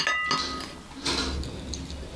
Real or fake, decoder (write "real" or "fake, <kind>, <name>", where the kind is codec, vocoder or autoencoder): real